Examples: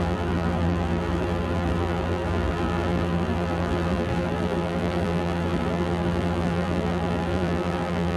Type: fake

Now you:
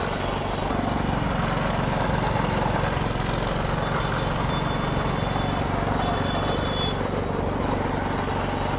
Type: real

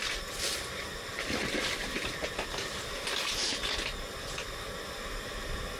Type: real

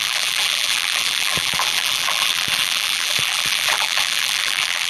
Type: fake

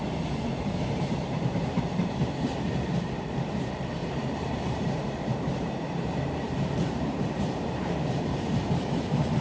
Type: fake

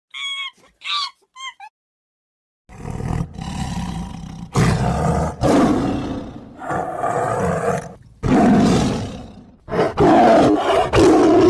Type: real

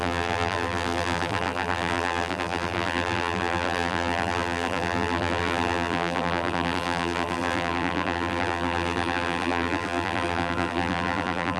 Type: fake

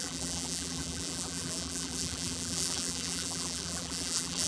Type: fake